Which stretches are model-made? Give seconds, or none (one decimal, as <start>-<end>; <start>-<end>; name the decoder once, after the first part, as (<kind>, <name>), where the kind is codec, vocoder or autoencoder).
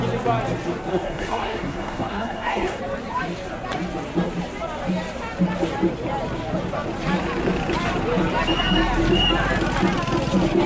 0.9-2.8 (codec, SNAC)